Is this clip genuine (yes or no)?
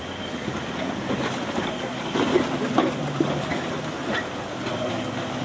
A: yes